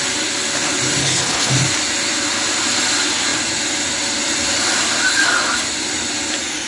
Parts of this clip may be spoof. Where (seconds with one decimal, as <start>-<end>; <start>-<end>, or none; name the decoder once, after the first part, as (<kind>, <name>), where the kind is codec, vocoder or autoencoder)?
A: 1.0-1.5 (codec, HILCodec)